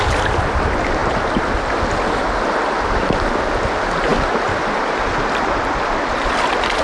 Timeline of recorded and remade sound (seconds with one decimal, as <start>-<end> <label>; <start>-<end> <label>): 0.0-6.8 recorded